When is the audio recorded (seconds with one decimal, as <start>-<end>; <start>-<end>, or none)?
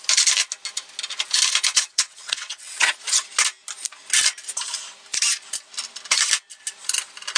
0.0-1.7; 2.9-7.4